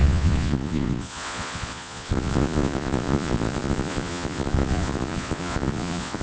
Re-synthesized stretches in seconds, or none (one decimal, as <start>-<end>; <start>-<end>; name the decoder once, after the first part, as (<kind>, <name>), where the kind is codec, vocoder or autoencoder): 0.0-6.2 (vocoder, Vocos)